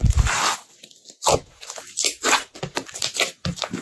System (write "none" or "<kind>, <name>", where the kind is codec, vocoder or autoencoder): none